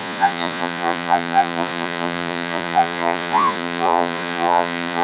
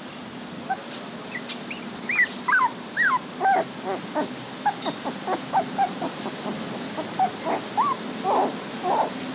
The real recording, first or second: second